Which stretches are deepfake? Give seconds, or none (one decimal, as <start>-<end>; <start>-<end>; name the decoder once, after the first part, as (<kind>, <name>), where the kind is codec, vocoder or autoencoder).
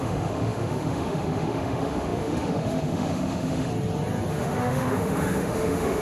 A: 0.0-3.7 (autoencoder, DAC-VAE); 4.3-6.0